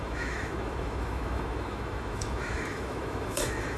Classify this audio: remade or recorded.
remade